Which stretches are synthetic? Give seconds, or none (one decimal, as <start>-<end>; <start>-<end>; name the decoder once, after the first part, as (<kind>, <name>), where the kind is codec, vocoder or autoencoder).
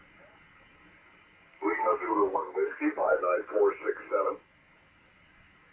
1.5-3.2 (codec, SNAC)